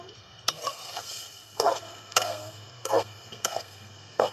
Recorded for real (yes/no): no